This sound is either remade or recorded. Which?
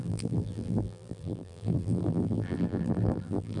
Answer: remade